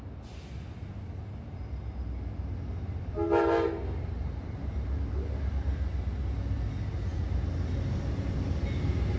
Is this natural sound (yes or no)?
yes